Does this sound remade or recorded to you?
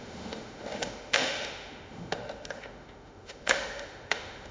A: remade